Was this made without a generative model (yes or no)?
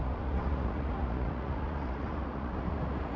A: no